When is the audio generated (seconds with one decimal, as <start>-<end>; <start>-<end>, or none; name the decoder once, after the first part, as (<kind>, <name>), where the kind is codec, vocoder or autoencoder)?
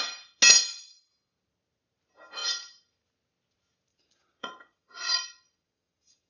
0.6-1.1 (vocoder, Vocos); 3.9-6.3